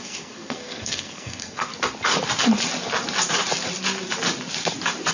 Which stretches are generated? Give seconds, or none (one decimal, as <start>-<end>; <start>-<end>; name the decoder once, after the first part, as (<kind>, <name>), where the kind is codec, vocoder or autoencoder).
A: 0.0-1.7 (codec, SNAC)